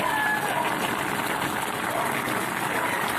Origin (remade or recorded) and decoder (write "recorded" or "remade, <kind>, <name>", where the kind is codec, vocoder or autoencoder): recorded